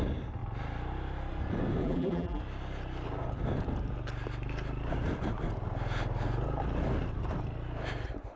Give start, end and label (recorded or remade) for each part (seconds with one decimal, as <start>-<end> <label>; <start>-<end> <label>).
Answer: 0.0-1.8 recorded; 1.8-2.4 remade; 2.4-8.4 recorded